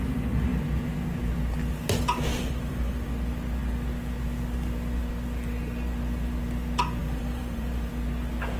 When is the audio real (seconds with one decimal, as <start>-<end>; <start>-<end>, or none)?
0.0-2.3; 3.1-7.0; 7.9-8.6